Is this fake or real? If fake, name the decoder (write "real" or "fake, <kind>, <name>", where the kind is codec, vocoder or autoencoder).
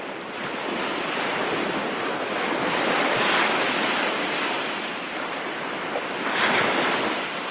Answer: fake, vocoder, BigVGAN v2